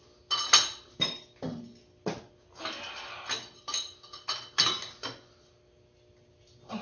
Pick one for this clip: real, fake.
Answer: real